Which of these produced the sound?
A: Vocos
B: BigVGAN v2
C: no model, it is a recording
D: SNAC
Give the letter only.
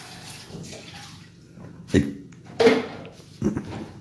C